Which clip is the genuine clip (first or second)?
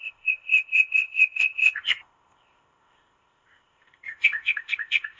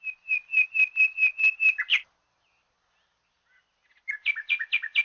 second